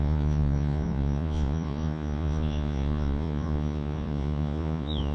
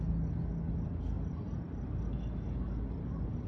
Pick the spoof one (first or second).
first